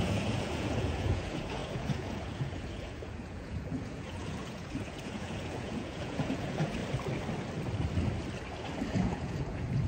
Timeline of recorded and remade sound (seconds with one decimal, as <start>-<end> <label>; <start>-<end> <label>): 0.0-6.8 remade; 6.8-8.9 recorded; 8.9-9.9 remade